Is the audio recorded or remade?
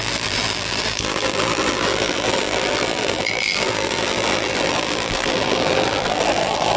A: remade